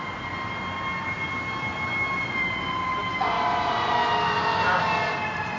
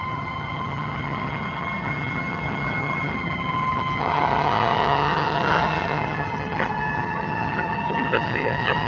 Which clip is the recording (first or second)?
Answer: first